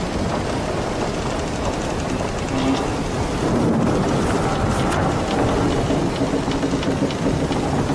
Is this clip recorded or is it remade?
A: recorded